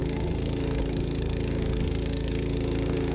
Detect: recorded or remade remade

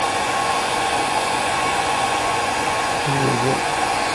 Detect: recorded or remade remade